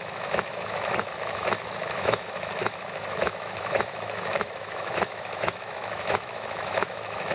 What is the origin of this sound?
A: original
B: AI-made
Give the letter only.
B